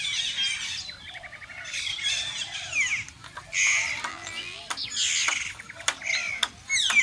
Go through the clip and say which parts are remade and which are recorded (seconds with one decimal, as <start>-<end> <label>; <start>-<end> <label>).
0.0-4.1 recorded; 4.1-4.6 remade; 4.6-7.0 recorded